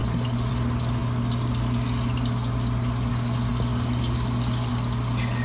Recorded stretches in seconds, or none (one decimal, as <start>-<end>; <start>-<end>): 0.0-5.4